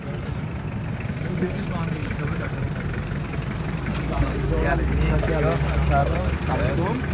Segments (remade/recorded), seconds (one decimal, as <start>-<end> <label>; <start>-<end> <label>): 0.0-2.0 recorded; 2.0-5.3 remade; 5.3-6.0 recorded; 6.0-7.1 remade